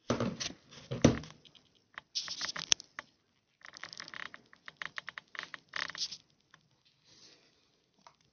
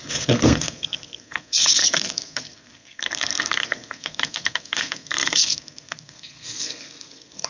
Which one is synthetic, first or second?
second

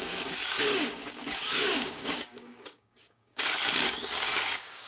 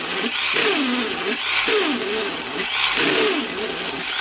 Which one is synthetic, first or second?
first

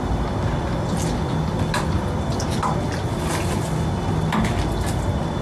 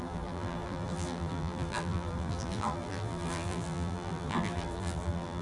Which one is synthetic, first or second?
second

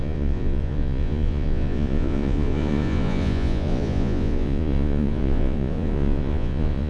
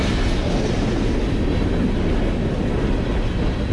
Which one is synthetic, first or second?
first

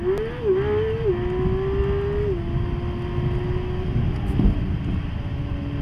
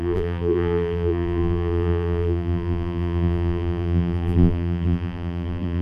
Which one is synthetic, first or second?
second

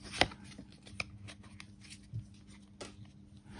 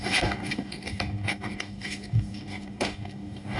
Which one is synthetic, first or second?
second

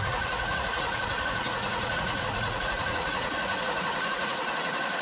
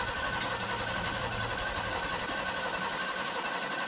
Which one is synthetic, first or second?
first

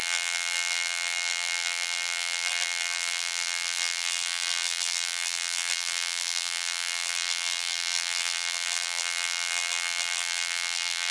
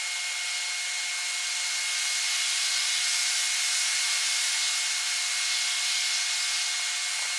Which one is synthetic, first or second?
first